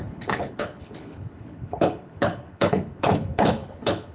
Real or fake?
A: fake